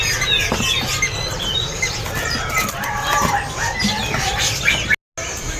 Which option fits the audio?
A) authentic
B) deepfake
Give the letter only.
A